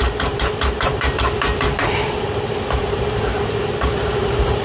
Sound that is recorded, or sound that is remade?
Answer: remade